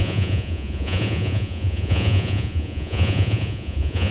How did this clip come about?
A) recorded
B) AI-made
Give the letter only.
B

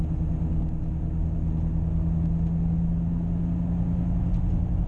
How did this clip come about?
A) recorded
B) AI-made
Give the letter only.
A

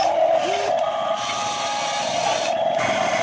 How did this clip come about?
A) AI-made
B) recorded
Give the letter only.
B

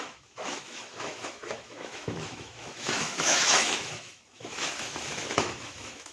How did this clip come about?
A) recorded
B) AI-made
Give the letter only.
B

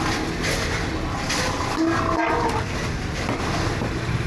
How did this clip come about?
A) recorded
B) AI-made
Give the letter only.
A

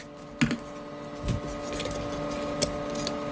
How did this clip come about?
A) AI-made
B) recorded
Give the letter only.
B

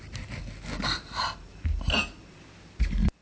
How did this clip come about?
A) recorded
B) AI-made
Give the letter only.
A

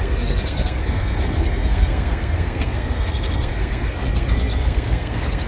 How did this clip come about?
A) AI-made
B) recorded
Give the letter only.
A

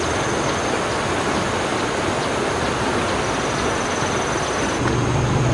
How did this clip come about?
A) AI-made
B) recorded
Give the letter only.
B